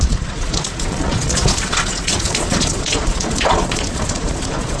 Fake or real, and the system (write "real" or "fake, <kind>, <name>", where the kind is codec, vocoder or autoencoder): fake, vocoder, Vocos